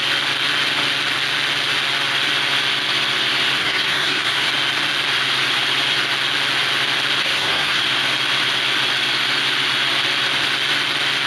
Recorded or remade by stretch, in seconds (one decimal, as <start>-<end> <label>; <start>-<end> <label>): 0.0-3.6 recorded; 3.6-4.5 remade; 4.5-7.2 recorded; 7.2-7.8 remade; 7.8-11.3 recorded